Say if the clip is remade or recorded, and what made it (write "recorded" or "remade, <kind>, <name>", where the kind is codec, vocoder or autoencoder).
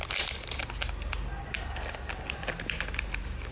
recorded